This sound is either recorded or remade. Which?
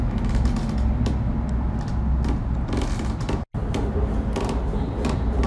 recorded